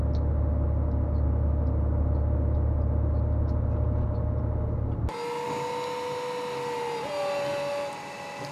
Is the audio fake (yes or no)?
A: no